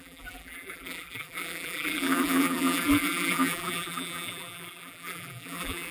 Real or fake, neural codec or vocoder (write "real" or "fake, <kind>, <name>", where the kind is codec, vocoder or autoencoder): fake, vocoder, BigVGAN v2